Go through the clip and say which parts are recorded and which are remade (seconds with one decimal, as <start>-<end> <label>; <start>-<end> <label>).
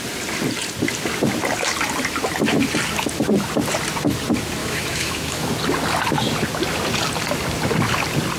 0.0-4.6 recorded; 4.6-5.5 remade; 5.5-8.4 recorded